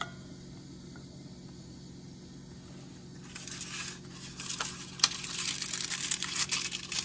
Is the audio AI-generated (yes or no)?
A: no